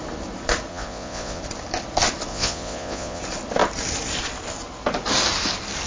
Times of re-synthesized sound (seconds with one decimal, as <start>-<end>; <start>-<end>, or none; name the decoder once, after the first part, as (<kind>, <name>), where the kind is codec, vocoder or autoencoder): 0.7-1.4 (vocoder, Vocos); 2.3-3.2